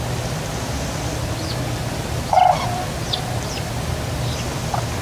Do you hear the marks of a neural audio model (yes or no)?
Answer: no